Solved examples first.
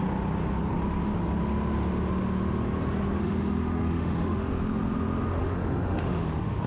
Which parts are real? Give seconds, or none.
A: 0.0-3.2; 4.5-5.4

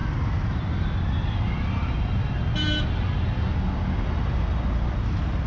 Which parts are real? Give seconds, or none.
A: 0.0-5.5

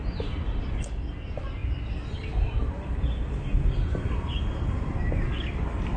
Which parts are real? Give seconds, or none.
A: 0.0-6.0

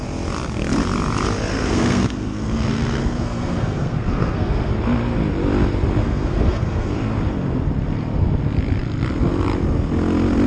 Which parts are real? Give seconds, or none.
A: 0.0-1.5; 4.7-6.0; 6.9-10.5

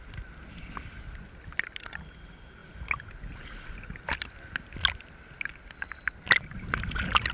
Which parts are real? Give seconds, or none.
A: 0.0-7.3

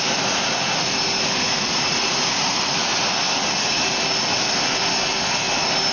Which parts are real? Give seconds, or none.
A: 0.0-5.9

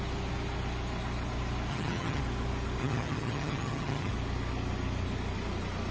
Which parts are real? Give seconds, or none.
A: 0.0-1.7; 2.2-2.8; 4.1-5.9